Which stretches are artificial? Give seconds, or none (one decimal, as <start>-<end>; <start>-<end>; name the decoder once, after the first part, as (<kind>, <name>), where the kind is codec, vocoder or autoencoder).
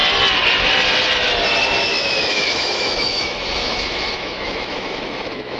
1.9-5.6 (autoencoder, DAC-VAE)